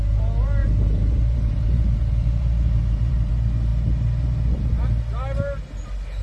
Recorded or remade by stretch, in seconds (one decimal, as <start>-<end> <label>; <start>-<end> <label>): 0.0-0.6 recorded; 0.6-3.3 remade; 3.3-6.2 recorded